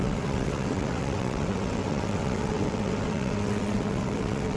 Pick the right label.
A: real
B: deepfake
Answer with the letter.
B